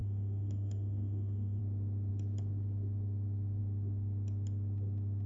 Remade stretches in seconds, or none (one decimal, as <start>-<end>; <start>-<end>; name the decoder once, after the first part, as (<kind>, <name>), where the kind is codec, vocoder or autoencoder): 0.0-1.6 (autoencoder, DAC-VAE)